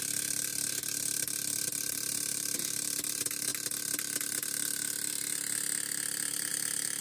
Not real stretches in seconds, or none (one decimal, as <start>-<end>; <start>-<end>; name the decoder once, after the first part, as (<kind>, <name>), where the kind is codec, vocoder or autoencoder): 0.0-0.5 (vocoder, BigVGAN v2); 1.9-3.5; 6.5-7.0